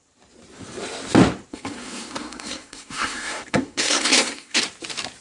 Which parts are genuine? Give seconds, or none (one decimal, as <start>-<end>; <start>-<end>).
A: 0.0-1.5; 4.6-5.2